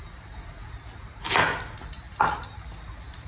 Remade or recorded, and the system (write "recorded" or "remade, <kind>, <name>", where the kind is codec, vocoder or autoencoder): recorded